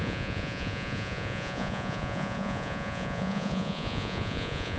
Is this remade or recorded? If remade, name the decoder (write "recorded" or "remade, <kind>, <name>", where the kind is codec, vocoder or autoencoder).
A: remade, vocoder, Vocos